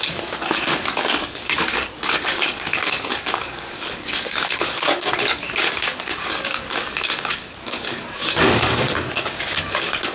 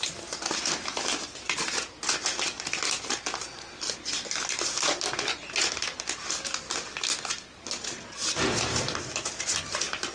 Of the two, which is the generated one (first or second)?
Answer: first